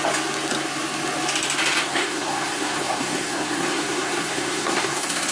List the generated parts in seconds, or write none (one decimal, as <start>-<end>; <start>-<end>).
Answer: 1.8-5.3